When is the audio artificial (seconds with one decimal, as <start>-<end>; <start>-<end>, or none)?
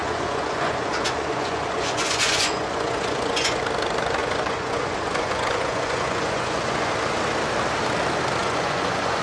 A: 0.0-3.6; 4.2-6.9; 8.4-9.2